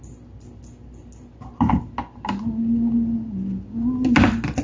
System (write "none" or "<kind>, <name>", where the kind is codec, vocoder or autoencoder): none